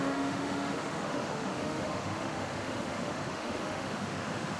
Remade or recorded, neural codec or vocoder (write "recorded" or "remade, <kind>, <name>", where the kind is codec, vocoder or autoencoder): remade, autoencoder, DAC-VAE